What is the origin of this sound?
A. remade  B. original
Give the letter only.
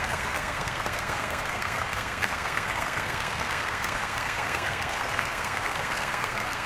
A